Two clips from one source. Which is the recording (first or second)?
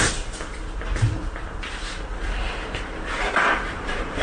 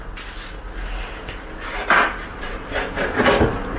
second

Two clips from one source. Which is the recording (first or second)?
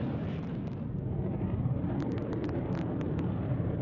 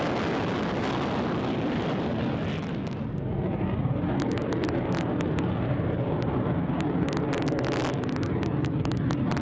second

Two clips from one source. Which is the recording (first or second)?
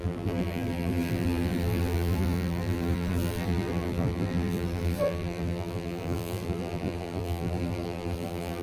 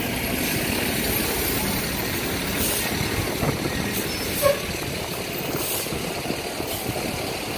second